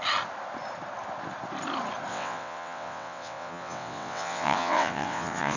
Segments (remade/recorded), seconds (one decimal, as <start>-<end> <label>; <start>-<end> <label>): 0.0-2.1 recorded; 2.1-5.6 remade